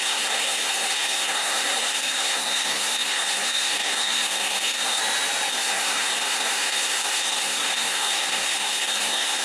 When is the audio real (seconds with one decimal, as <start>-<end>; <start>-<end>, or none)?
5.0-5.5